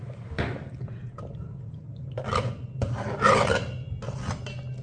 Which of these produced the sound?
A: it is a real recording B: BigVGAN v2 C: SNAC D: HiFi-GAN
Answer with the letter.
A